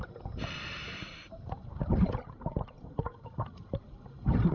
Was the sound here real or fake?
fake